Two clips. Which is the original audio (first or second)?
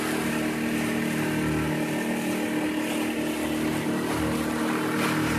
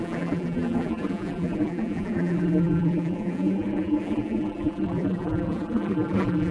first